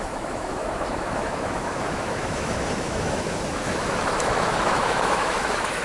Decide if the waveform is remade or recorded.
remade